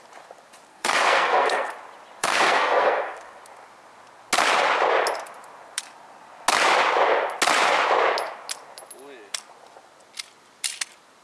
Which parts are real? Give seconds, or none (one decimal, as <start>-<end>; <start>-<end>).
0.0-0.7; 1.7-2.2; 3.4-11.2

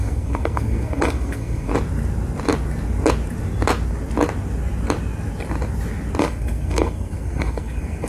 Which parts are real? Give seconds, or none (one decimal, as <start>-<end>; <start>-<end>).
1.7-6.2

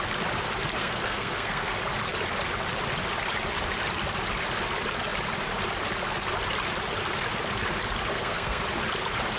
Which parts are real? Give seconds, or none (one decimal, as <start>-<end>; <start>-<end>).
0.0-0.8; 1.7-8.1; 8.6-9.4

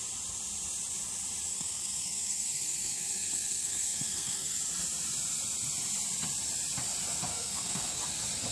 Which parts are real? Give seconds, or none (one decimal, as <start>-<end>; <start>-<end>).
0.0-1.5; 4.6-7.3; 8.0-8.5

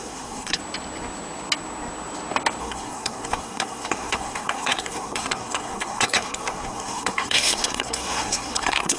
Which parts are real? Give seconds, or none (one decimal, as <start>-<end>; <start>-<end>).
0.6-2.6

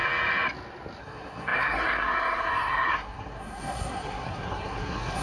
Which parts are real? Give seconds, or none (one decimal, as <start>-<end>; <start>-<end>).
0.0-1.0

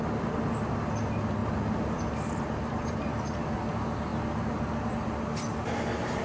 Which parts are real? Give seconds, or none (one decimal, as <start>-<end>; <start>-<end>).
0.0-6.2

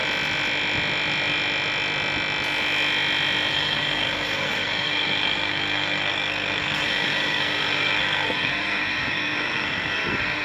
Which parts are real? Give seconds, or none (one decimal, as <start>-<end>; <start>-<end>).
0.0-3.5